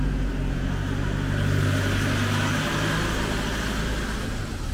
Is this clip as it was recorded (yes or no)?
yes